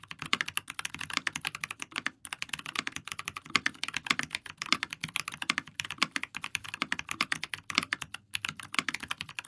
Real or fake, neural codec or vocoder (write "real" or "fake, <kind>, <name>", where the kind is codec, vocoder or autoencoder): real